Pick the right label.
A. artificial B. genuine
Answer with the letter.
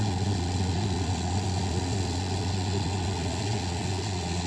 A